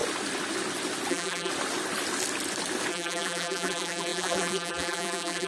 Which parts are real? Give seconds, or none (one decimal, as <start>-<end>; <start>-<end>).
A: 0.0-1.1; 1.5-2.9